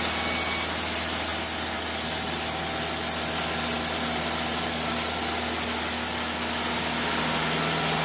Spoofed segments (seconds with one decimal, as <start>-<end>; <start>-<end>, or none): none